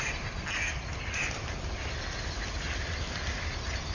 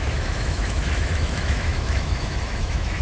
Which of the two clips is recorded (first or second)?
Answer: first